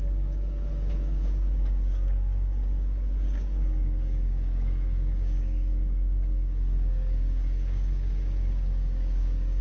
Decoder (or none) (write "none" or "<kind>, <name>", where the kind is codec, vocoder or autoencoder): codec, DAC